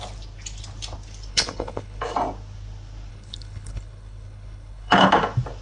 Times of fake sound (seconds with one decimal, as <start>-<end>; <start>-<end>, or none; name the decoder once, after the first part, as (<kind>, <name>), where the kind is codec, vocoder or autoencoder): 1.3-2.0 (codec, HILCodec); 3.1-5.1